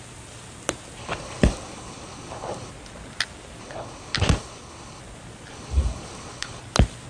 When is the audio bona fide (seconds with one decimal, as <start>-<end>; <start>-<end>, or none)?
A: 0.0-1.0; 2.7-3.6; 5.0-5.5; 6.6-7.1